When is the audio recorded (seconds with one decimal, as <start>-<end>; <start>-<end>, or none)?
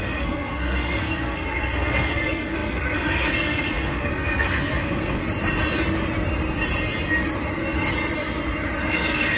5.2-8.9